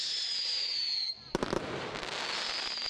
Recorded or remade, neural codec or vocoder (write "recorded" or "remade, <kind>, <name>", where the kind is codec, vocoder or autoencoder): recorded